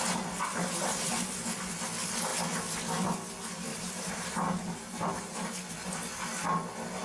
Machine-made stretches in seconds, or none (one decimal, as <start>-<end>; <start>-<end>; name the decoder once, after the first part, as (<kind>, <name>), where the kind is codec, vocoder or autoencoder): 0.5-1.1 (vocoder, BigVGAN v2); 3.7-5.7